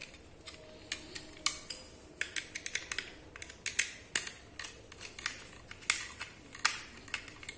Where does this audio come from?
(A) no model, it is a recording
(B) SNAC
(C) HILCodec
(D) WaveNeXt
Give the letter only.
A